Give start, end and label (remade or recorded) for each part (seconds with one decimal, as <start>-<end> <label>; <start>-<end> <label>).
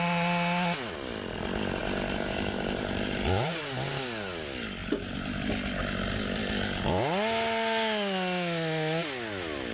0.0-1.8 recorded; 1.8-3.6 remade; 3.6-9.7 recorded